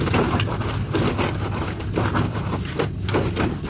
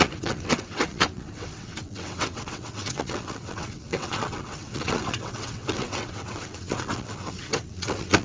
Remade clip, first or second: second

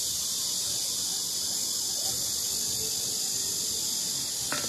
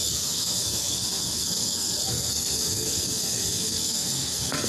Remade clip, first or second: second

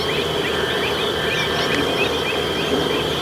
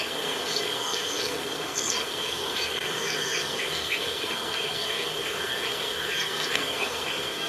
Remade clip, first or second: second